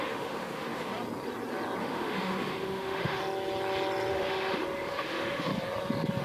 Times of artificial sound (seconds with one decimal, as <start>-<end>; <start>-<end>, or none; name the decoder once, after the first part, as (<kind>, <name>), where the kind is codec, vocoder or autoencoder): 0.0-0.9 (autoencoder, DAC-VAE); 1.8-3.2; 4.1-5.5